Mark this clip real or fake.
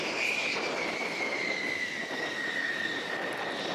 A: real